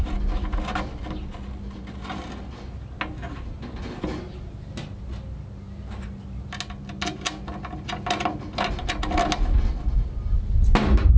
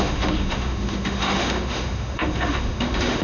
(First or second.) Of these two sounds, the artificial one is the second